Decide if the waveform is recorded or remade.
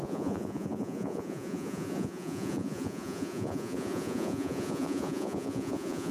remade